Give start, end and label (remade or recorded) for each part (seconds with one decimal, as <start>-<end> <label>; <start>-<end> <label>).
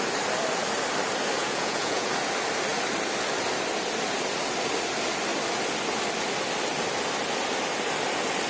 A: 0.0-1.4 recorded; 1.4-2.1 remade; 2.1-8.5 recorded